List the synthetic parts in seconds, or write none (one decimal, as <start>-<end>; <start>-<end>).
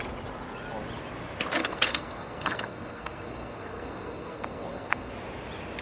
1.6-5.1